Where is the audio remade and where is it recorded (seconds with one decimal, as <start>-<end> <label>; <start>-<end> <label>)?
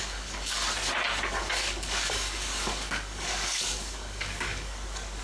0.0-0.6 remade; 0.6-1.3 recorded; 1.3-5.2 remade